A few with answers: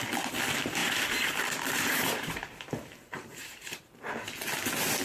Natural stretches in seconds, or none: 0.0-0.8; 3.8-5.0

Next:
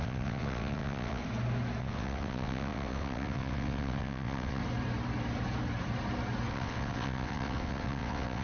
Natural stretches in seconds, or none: 1.2-1.8; 4.6-6.5

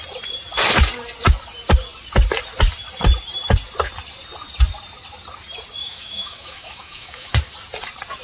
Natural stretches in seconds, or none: 0.0-5.8; 7.3-8.2

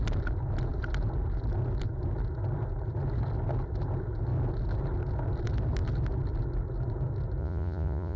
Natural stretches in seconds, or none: 0.0-7.4

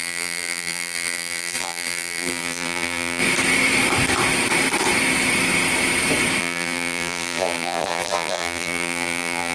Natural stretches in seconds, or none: 3.2-6.4